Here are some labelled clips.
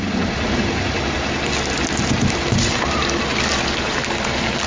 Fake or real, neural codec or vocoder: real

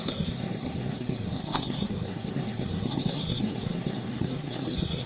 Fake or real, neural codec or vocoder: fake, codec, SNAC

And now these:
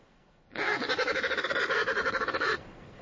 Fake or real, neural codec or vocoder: fake, codec, SNAC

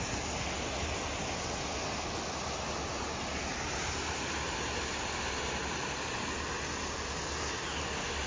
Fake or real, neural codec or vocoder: real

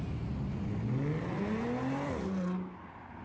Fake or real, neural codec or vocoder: real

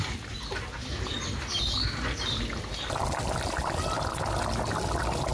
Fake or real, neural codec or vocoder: real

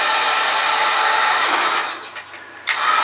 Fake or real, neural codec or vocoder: real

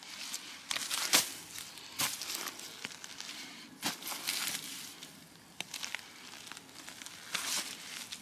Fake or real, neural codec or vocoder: real